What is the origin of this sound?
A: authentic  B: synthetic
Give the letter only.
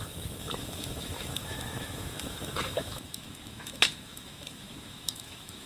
B